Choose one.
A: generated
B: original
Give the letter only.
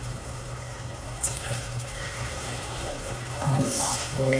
A